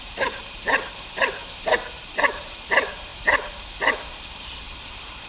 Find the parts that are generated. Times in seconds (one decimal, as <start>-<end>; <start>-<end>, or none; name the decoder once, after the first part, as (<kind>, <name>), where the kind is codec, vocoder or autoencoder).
0.0-1.4 (vocoder, BigVGAN v2); 2.0-3.1; 4.3-5.3